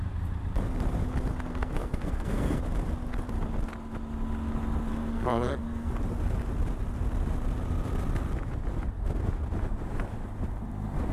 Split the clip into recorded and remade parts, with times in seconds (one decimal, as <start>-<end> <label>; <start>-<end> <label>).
0.0-1.5 recorded; 1.5-2.6 remade; 2.6-4.9 recorded; 4.9-5.9 remade; 5.9-11.1 recorded